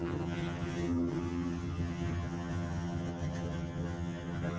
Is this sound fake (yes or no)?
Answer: yes